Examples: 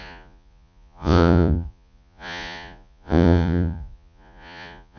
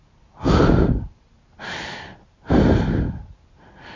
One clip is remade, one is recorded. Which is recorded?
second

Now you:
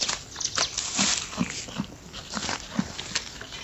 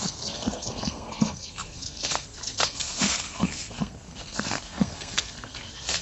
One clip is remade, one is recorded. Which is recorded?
first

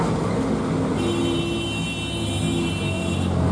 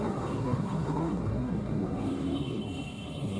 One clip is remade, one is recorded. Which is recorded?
first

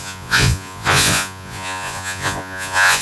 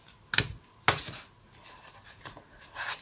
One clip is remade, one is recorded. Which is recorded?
second